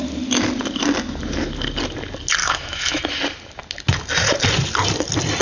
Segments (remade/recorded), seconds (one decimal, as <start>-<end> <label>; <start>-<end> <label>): 0.0-2.4 recorded; 2.4-3.0 remade; 3.0-5.4 recorded